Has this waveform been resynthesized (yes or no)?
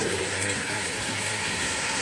yes